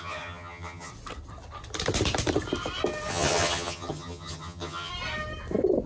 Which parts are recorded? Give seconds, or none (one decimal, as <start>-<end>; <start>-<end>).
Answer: 0.9-3.1; 4.9-5.9